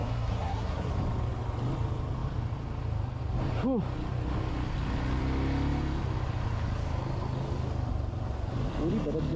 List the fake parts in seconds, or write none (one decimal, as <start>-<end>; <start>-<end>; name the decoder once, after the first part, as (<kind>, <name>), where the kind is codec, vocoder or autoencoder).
0.0-0.9 (codec, SNAC)